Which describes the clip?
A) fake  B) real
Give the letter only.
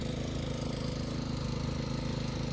B